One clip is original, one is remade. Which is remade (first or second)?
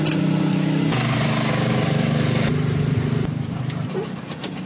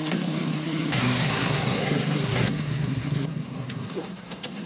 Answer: second